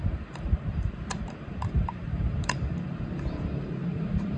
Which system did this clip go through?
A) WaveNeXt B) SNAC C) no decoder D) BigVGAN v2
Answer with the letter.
D